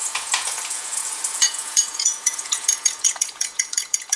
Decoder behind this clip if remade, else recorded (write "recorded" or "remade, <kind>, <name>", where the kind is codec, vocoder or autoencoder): remade, vocoder, Vocos